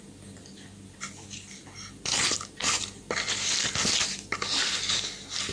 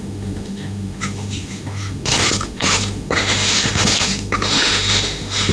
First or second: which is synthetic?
second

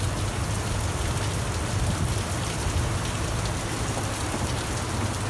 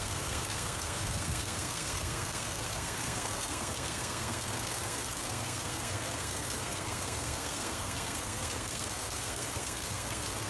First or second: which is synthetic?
second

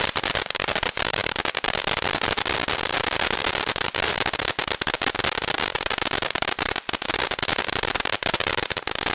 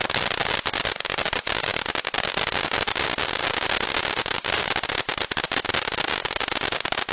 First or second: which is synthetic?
first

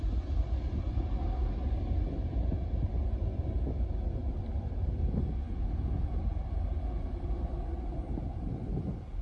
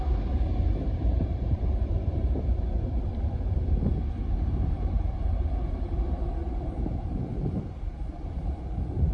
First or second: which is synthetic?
second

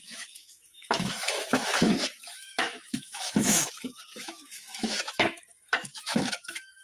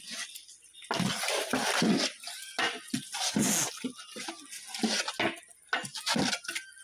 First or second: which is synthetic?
first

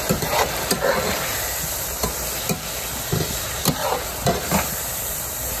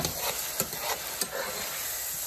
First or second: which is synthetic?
first